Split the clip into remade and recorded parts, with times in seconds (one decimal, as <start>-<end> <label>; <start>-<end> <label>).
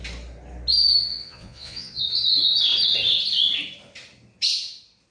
0.0-1.1 recorded; 1.1-2.0 remade; 2.0-5.1 recorded